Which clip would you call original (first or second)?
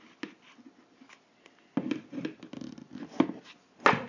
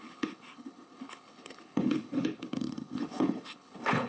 first